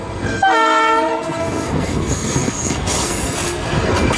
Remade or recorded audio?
remade